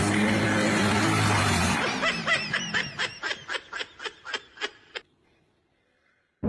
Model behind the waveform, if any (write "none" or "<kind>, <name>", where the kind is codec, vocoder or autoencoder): none